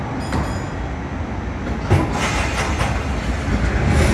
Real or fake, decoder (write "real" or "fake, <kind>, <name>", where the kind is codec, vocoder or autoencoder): real